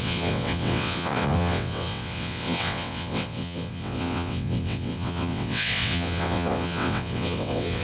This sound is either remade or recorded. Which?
remade